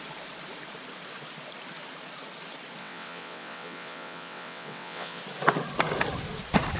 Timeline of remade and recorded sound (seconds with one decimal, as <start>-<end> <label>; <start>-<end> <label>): 0.0-2.8 recorded; 2.8-5.2 remade; 5.2-6.8 recorded